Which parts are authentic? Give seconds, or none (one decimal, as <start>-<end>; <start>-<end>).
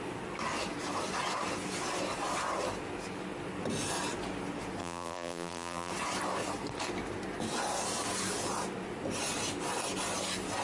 0.0-4.8; 5.9-10.6